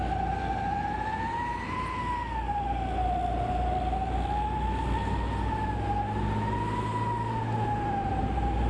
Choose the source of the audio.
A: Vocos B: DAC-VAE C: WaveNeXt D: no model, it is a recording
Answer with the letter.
D